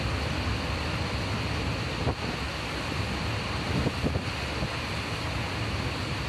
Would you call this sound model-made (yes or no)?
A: no